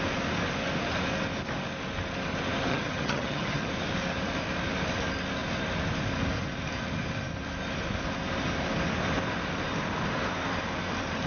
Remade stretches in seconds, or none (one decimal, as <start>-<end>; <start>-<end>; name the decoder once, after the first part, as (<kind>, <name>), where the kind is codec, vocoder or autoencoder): 2.7-3.7 (vocoder, HiFi-GAN)